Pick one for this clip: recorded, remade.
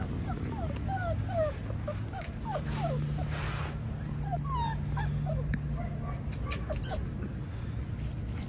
recorded